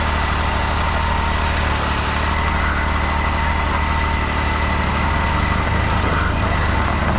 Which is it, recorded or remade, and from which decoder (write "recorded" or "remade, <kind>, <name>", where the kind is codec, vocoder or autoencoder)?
recorded